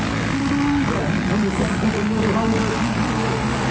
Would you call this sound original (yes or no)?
yes